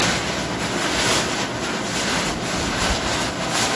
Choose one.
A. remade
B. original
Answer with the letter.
B